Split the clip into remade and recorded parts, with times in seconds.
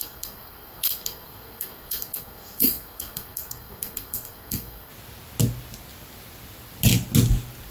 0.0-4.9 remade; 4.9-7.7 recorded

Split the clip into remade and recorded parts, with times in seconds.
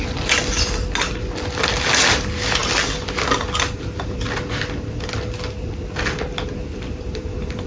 0.0-7.7 recorded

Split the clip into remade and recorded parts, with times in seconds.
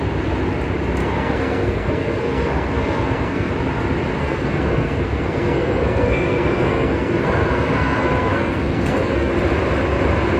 0.0-1.0 recorded; 1.0-3.5 remade; 3.5-4.2 recorded; 4.2-9.3 remade; 9.3-10.4 recorded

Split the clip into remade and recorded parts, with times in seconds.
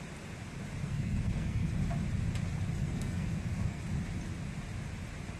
0.0-0.8 recorded; 0.8-1.7 remade; 1.7-2.8 recorded; 2.8-3.8 remade; 3.8-5.4 recorded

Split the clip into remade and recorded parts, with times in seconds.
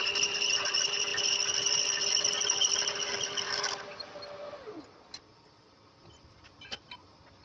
0.0-7.4 recorded